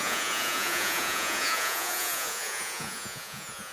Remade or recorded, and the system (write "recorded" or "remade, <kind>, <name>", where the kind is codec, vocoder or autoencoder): remade, vocoder, Vocos